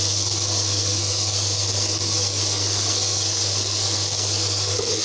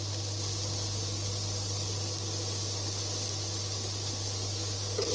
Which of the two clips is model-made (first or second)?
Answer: first